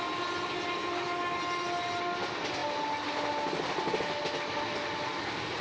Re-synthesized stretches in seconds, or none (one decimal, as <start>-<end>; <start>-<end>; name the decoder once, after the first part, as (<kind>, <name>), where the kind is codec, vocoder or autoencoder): none